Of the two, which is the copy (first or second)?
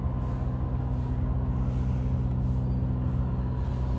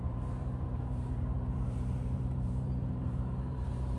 second